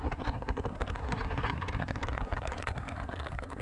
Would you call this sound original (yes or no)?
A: no